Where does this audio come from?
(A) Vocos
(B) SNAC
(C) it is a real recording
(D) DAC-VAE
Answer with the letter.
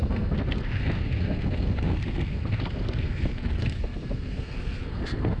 B